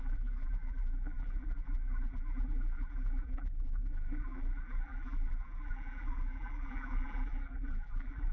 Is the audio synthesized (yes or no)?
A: yes